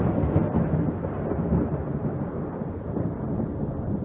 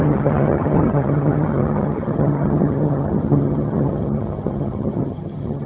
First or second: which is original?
first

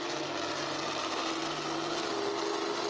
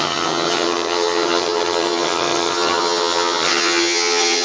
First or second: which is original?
first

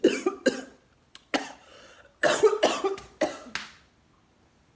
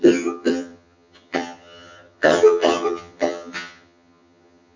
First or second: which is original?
first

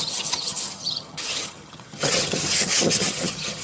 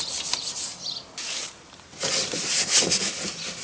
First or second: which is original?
second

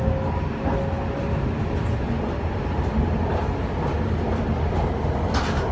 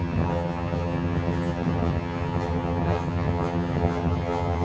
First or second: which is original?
first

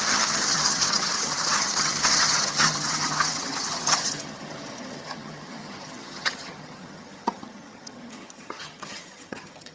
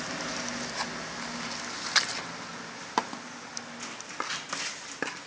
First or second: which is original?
second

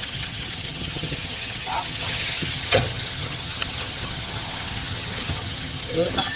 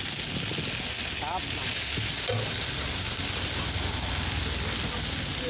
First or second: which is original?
second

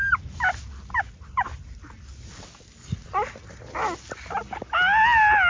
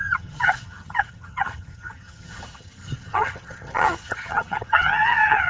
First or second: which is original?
first